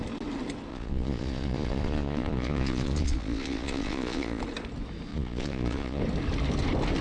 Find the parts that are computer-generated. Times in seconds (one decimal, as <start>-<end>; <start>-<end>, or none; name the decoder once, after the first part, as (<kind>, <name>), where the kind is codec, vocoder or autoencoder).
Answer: 0.7-4.4 (vocoder, Vocos); 5.1-6.0